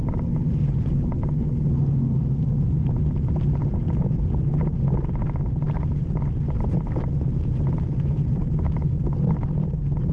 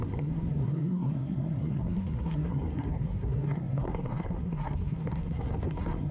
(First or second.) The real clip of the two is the first